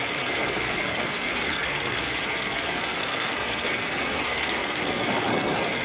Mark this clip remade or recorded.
remade